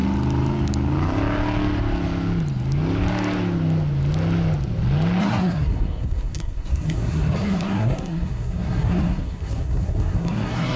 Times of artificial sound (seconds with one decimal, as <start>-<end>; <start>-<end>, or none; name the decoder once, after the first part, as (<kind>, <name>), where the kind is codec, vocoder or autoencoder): 5.2-10.8 (codec, SNAC)